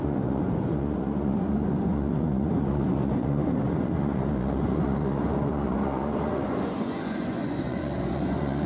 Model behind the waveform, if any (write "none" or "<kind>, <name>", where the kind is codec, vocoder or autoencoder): vocoder, Vocos